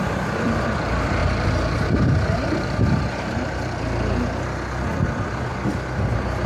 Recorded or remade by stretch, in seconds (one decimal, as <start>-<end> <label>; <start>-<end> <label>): 0.0-1.2 recorded; 1.2-3.6 remade; 3.6-6.5 recorded